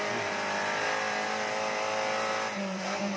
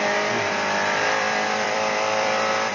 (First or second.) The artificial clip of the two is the second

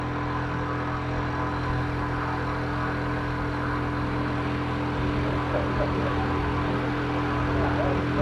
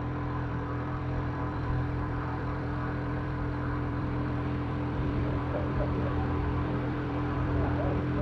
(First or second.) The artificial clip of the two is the second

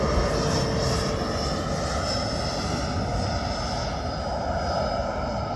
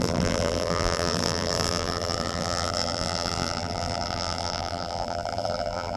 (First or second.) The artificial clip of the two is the second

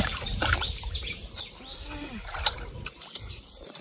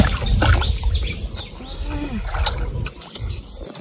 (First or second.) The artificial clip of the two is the first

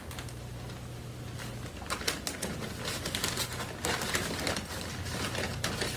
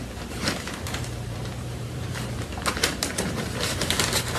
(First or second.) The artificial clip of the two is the second